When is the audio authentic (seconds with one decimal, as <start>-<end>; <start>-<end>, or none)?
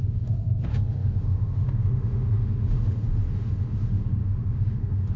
none